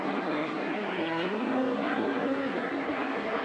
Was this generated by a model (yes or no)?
yes